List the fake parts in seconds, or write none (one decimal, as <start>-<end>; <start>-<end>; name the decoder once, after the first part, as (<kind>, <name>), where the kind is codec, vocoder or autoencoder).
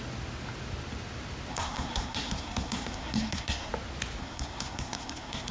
1.5-3.7 (codec, SNAC); 4.2-5.5